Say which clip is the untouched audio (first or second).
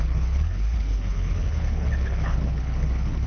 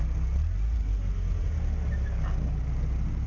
second